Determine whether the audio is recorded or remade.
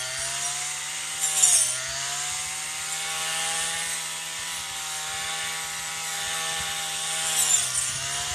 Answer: remade